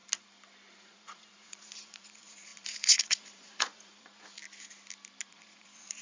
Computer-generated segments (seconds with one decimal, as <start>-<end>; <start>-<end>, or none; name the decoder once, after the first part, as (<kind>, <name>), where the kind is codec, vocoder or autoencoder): 0.7-4.4 (vocoder, Vocos); 5.3-6.0